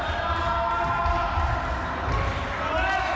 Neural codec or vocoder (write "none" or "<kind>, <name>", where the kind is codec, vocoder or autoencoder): none